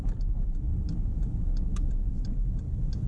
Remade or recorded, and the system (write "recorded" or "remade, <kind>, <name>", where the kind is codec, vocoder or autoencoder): remade, vocoder, BigVGAN v2